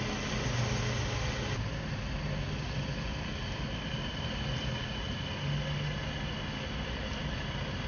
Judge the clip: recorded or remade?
recorded